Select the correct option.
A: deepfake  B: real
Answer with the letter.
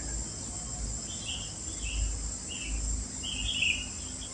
B